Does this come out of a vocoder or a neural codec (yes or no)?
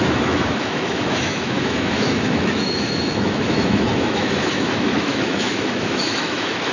yes